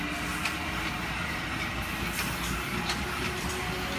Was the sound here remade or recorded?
recorded